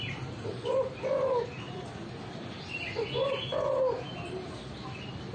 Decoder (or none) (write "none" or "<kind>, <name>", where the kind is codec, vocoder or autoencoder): none